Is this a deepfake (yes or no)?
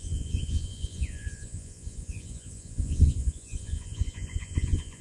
yes